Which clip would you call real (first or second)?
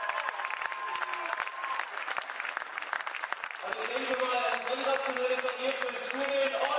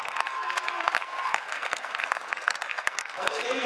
first